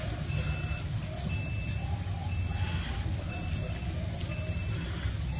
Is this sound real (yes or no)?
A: yes